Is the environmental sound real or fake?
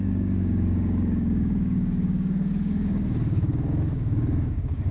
fake